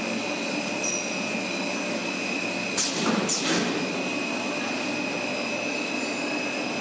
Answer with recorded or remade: recorded